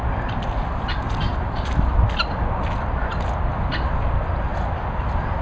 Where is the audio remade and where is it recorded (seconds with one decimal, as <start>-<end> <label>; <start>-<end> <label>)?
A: 0.0-5.4 recorded